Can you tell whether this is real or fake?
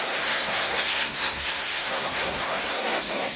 fake